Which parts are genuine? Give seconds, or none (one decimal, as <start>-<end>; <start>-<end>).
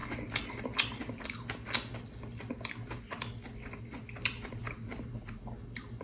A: 0.0-6.0